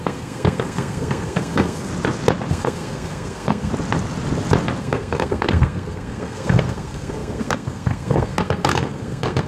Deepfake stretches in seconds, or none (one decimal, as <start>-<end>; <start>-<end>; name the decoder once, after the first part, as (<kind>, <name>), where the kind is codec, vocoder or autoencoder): 0.0-1.9 (codec, SNAC); 2.5-3.7; 4.8-9.5